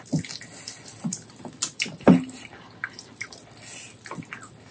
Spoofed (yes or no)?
no